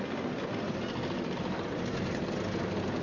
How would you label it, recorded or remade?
recorded